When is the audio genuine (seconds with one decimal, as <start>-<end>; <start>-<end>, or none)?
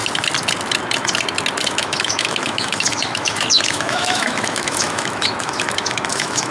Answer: 0.0-1.7